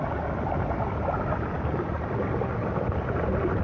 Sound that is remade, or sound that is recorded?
recorded